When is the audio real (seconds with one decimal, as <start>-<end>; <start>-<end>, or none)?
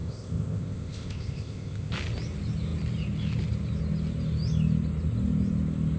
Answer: 1.9-6.0